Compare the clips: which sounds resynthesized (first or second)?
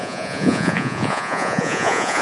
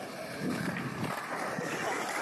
first